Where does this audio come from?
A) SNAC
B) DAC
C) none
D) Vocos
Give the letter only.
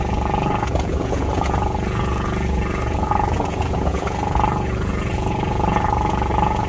D